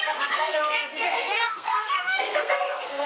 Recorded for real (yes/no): no